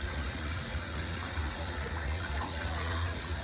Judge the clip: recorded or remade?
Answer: remade